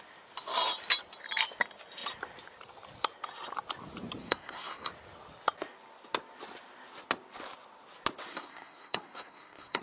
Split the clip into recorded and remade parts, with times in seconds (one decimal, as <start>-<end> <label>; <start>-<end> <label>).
0.0-4.2 recorded; 4.2-4.9 remade; 4.9-8.3 recorded; 8.3-9.8 remade